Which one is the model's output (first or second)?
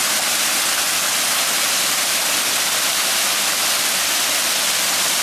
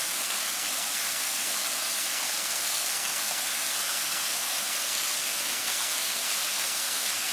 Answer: second